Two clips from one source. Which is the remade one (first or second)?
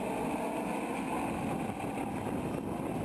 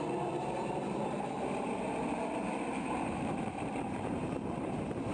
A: second